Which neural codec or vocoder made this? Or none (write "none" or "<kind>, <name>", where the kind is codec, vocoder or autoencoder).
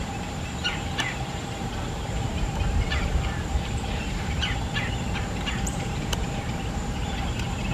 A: vocoder, BigVGAN v2